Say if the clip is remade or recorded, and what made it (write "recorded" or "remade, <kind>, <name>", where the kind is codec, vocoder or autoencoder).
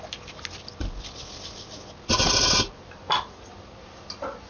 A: recorded